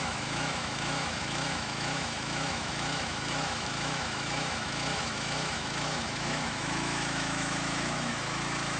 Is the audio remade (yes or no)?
yes